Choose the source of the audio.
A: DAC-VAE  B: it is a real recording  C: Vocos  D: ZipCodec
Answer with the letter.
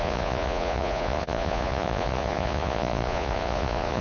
C